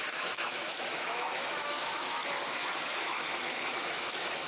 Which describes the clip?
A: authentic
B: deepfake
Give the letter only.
B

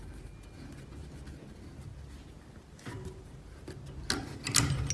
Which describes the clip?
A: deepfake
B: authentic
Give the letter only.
B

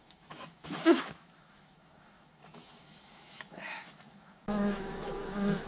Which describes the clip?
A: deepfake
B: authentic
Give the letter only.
A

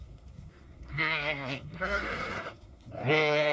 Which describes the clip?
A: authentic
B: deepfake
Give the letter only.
B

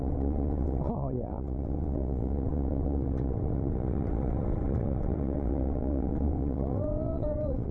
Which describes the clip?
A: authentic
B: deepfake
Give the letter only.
B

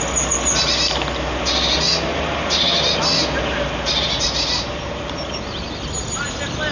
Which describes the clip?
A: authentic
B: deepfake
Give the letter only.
A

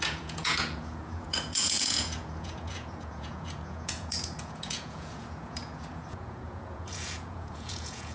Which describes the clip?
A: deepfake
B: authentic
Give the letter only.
A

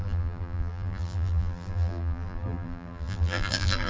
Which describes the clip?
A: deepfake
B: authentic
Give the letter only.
A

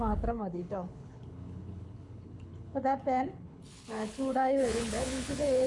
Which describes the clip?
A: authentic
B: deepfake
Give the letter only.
B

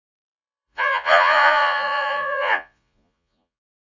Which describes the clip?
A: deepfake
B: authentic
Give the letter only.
A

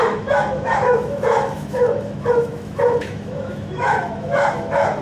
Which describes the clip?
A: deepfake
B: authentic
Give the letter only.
A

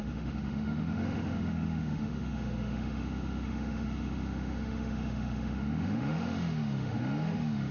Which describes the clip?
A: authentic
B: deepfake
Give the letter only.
B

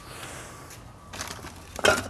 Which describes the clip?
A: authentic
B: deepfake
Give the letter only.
A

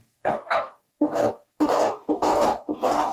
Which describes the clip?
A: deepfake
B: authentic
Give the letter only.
A